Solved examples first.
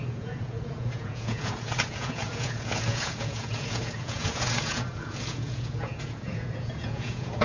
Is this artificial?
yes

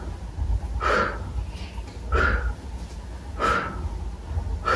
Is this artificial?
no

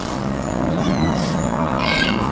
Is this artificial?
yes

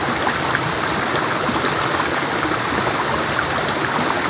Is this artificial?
no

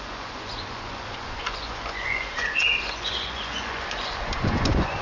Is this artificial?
yes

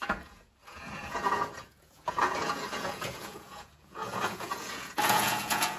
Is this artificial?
yes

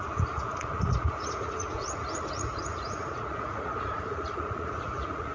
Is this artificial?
yes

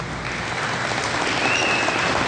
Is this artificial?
no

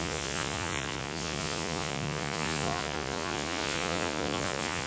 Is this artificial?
yes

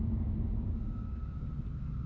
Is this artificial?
no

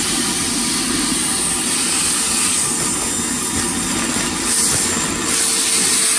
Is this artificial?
no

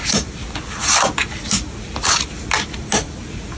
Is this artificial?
no